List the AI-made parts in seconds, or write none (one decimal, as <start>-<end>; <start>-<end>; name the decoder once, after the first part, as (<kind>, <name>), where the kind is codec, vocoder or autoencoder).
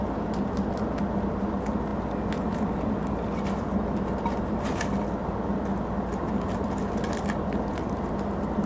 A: none